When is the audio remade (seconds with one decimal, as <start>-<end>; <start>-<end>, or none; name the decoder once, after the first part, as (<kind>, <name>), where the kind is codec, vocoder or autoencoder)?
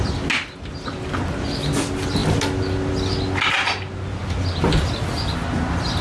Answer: none